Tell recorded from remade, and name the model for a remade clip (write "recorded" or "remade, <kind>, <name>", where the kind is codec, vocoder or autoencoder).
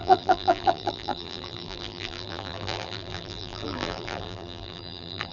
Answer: remade, vocoder, BigVGAN v2